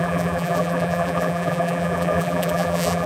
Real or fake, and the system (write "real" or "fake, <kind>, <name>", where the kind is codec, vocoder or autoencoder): fake, vocoder, BigVGAN v2